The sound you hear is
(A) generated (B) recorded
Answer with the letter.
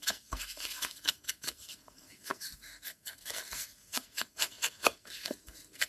A